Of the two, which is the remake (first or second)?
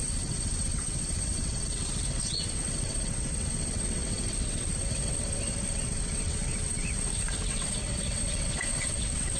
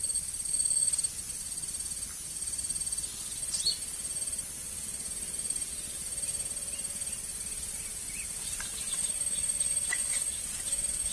first